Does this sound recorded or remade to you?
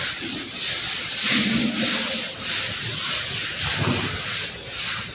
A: recorded